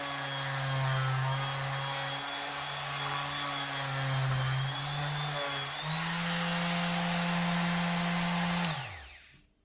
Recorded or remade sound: recorded